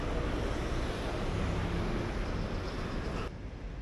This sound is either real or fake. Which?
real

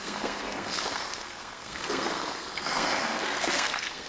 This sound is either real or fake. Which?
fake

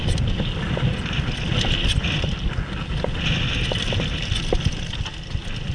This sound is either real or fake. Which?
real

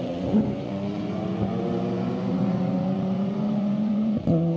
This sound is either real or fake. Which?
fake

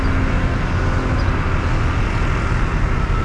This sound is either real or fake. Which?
real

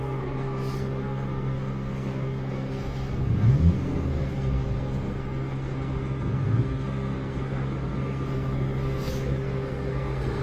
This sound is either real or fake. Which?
fake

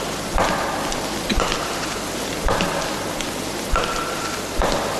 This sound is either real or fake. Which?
real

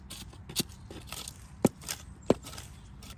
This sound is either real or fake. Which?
real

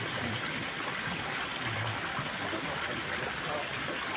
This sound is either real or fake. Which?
real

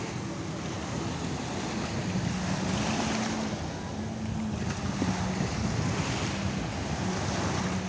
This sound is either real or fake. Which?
real